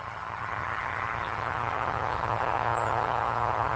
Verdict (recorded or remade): remade